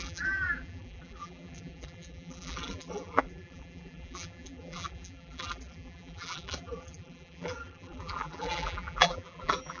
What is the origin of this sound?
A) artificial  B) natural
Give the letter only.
A